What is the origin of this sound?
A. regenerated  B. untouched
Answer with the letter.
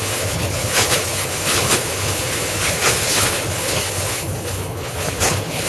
A